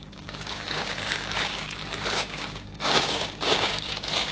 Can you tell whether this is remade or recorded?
remade